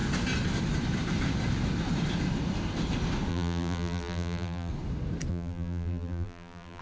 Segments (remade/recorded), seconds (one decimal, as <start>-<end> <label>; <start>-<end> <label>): 0.0-3.3 recorded; 3.3-4.7 remade; 4.7-5.3 recorded; 5.3-6.8 remade